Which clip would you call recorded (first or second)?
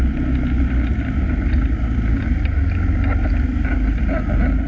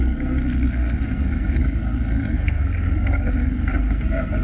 first